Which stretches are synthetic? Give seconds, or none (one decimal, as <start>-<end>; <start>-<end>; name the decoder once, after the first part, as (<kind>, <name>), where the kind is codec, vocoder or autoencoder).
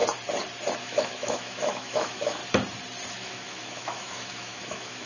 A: 0.8-2.4 (autoencoder, DAC-VAE); 3.1-5.1